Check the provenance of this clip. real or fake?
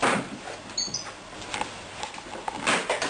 real